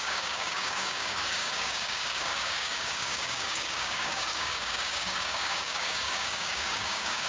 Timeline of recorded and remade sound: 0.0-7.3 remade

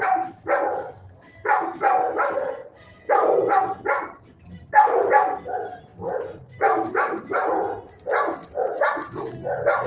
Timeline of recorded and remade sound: 0.0-2.6 recorded; 2.6-5.1 remade; 5.1-9.0 recorded; 9.0-9.9 remade

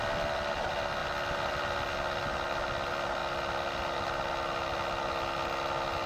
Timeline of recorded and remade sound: 0.0-6.1 recorded